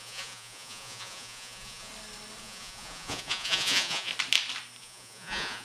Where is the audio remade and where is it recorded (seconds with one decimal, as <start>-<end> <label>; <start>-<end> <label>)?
0.0-1.9 remade; 1.9-2.4 recorded; 2.4-4.1 remade; 4.1-4.8 recorded; 4.8-5.6 remade